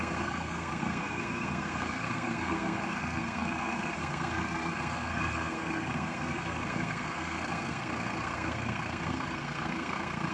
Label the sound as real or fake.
fake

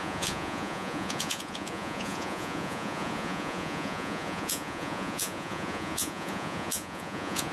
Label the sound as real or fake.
fake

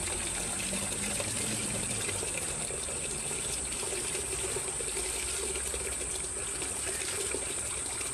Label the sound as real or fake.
real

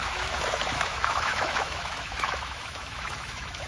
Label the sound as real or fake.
fake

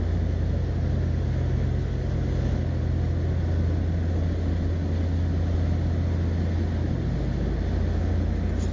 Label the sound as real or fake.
real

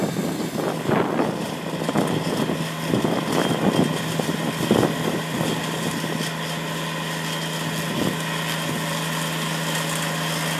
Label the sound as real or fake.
real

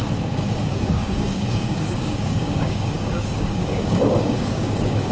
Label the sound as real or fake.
fake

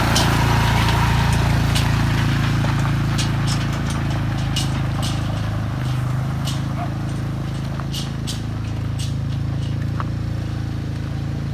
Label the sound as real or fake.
real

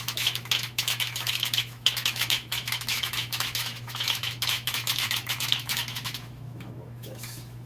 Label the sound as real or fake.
fake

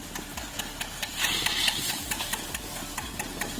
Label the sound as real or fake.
real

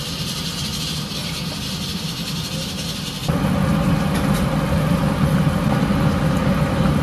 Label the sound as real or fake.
real